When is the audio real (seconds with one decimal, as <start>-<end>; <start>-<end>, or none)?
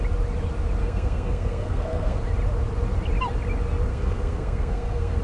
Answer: 0.0-0.8; 2.2-3.9